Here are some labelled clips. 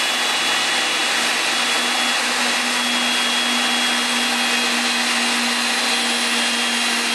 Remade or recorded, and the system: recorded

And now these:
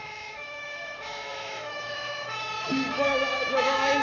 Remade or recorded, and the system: remade, autoencoder, DAC-VAE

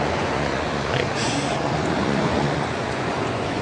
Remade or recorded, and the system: remade, vocoder, Vocos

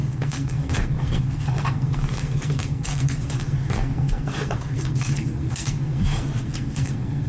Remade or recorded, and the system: remade, codec, SNAC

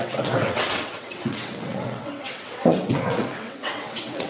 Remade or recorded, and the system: remade, vocoder, WaveNeXt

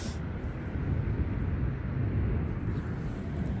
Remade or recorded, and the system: recorded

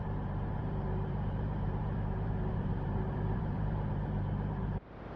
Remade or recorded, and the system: remade, vocoder, BigVGAN v2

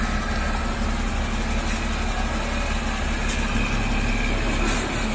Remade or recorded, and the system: recorded